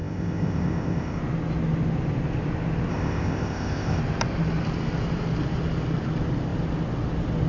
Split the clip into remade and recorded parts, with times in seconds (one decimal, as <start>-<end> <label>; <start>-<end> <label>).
0.0-1.2 remade; 1.2-2.9 recorded; 2.9-4.0 remade; 4.0-7.5 recorded